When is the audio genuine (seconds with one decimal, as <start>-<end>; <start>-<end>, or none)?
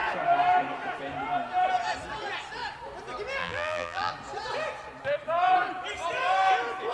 0.0-3.4; 4.1-6.9